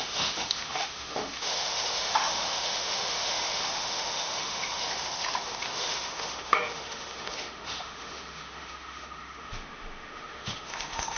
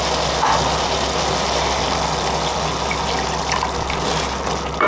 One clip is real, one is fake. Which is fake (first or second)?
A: first